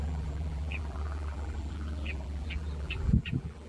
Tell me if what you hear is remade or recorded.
remade